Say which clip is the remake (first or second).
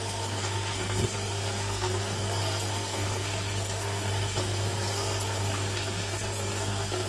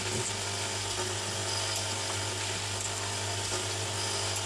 first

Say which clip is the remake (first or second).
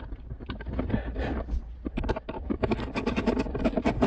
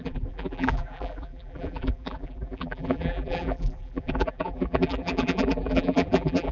second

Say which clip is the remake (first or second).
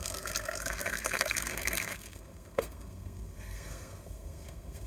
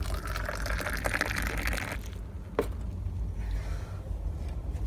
first